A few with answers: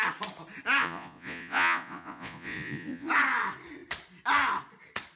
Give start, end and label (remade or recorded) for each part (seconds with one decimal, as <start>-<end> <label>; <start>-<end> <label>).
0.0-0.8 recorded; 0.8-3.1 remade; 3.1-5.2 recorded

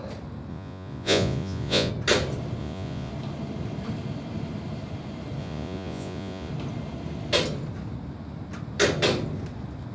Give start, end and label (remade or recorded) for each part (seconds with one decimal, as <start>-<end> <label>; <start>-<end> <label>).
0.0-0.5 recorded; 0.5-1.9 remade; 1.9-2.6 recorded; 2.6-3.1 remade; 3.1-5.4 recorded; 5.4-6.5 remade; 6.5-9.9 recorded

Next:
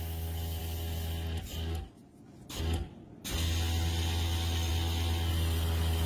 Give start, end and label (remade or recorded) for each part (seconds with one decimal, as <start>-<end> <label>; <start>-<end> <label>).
0.0-6.1 recorded